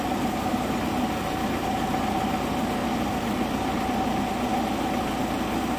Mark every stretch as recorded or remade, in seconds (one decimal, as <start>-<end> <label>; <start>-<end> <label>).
0.0-5.8 recorded